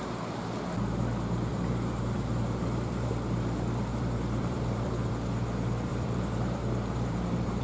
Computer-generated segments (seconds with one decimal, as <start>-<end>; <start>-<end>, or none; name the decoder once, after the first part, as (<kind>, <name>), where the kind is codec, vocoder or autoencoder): 1.5-3.1 (vocoder, BigVGAN v2); 3.9-5.1; 5.9-7.6